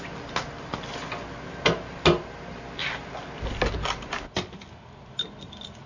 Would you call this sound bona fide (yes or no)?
yes